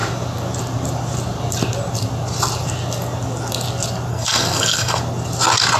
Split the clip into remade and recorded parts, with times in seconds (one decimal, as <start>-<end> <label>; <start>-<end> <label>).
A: 0.0-4.1 recorded; 4.1-5.0 remade; 5.0-5.8 recorded